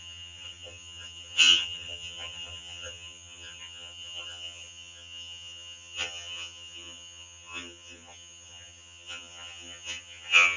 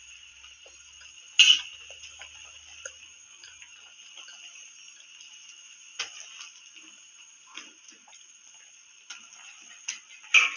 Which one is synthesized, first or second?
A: first